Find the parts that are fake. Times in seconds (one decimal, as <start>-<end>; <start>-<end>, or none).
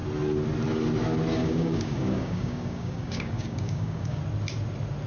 1.4-4.2